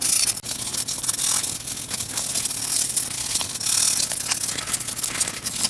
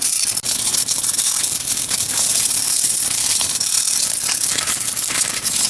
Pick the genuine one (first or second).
first